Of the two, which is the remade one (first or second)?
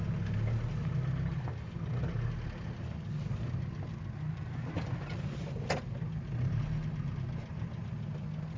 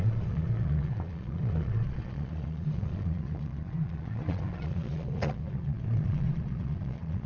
second